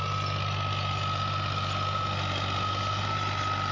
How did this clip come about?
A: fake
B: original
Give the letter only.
B